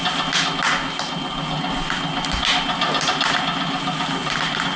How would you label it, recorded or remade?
recorded